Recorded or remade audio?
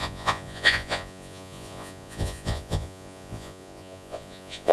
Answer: remade